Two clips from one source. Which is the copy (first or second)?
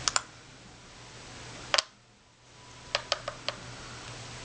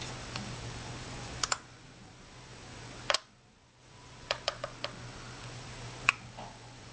second